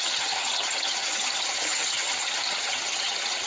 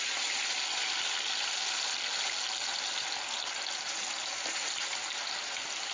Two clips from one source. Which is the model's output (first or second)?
first